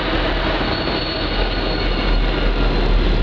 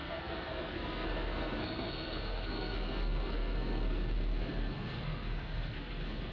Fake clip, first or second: second